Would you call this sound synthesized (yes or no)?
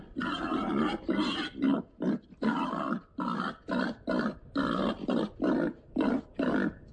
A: no